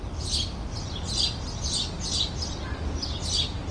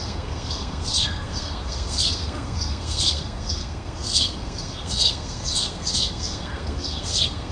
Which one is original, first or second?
first